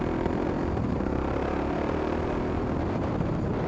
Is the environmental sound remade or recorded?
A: recorded